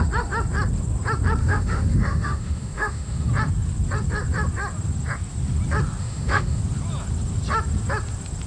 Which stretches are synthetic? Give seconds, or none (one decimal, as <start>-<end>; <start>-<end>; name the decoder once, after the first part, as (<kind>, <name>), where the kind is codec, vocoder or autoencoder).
1.4-3.3 (autoencoder, DAC-VAE); 6.0-6.6